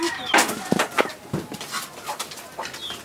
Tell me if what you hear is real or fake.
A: real